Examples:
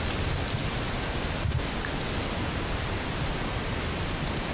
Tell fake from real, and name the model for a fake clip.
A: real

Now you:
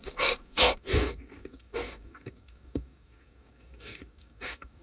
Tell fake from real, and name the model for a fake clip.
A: fake, codec, DAC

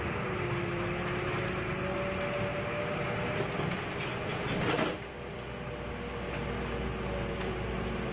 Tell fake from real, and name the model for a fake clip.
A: real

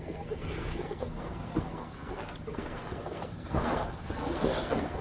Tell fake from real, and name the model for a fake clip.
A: fake, codec, SNAC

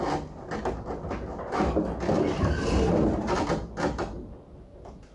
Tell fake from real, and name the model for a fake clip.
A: real